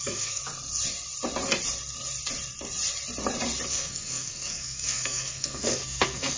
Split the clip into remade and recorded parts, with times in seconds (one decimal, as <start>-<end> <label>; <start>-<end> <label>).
0.0-0.4 remade; 0.4-3.7 recorded; 3.7-6.4 remade